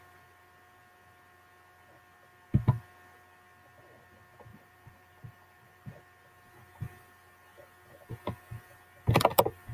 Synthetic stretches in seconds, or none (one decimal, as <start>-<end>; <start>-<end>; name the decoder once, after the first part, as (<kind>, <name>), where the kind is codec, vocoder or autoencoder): 4.5-5.9 (vocoder, BigVGAN v2)